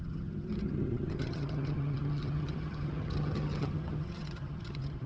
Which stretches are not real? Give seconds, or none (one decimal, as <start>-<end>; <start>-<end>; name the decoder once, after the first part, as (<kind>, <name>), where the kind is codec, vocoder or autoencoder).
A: 0.0-5.1 (vocoder, HiFi-GAN)

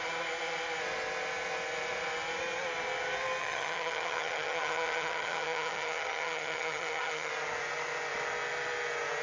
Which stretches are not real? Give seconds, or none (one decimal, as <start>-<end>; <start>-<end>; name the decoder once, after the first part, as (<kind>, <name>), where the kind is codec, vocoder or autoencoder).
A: 3.4-7.3 (vocoder, HiFi-GAN)

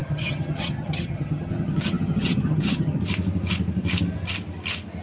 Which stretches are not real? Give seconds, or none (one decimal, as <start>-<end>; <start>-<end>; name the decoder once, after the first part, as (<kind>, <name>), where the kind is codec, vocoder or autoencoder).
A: 0.0-3.0 (vocoder, HiFi-GAN)

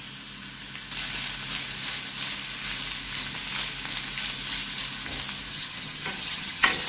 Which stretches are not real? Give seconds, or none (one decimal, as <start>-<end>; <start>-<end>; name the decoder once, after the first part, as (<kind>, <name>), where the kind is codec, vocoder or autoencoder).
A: 5.5-6.9 (vocoder, HiFi-GAN)